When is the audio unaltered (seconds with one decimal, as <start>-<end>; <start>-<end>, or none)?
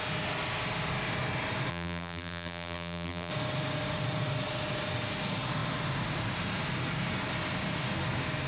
0.0-1.7; 3.3-8.5